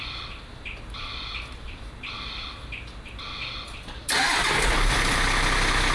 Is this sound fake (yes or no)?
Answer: no